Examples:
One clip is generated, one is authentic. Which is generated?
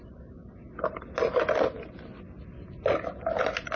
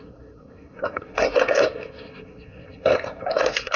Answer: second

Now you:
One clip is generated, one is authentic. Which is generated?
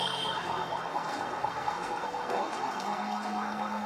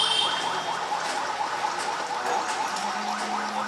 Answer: first